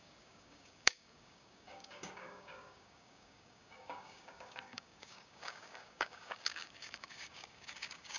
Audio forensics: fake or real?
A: fake